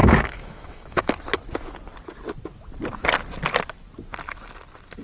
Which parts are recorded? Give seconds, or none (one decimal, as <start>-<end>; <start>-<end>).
1.1-5.0